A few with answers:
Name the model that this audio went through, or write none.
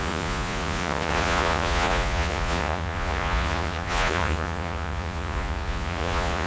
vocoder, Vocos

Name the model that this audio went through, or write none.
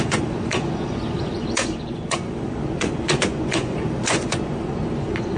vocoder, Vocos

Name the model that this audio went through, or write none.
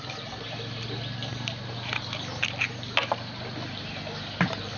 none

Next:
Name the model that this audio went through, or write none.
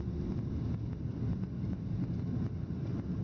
none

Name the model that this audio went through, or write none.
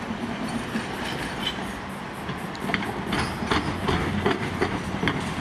none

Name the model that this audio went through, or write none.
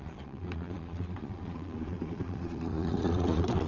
vocoder, Vocos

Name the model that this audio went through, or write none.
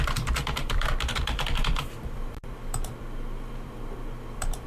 vocoder, BigVGAN v2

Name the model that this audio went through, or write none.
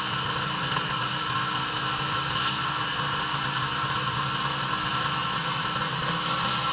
none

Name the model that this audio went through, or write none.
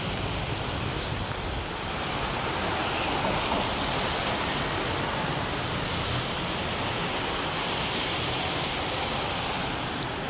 none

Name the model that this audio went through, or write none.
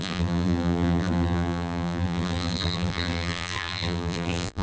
vocoder, BigVGAN v2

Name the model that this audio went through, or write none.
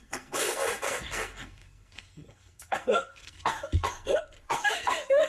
codec, SNAC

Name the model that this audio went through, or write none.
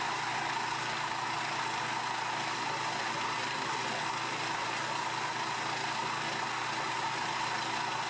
none